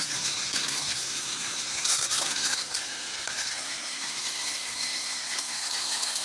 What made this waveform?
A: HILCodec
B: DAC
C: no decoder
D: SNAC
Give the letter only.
D